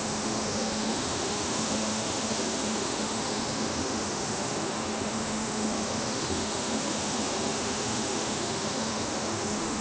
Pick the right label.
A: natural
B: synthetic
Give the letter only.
B